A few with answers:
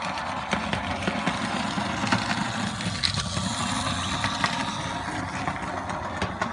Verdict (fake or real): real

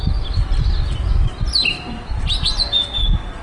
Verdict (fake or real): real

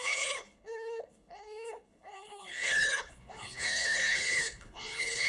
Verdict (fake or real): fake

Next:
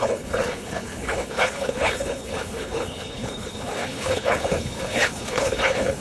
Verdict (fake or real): fake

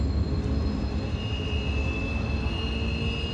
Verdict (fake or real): real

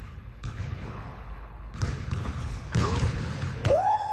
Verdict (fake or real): fake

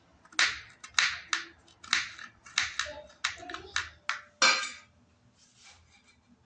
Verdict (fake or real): real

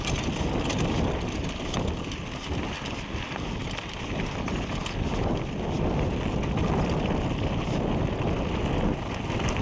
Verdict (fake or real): real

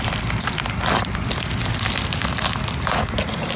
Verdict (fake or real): real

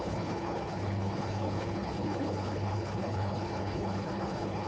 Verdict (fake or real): fake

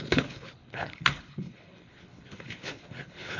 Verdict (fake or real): fake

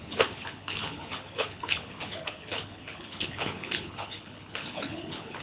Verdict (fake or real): fake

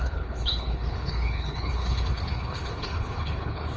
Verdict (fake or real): fake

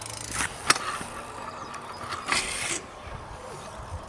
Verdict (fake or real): real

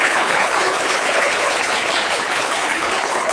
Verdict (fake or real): fake